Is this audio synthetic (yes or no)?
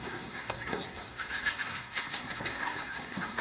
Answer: yes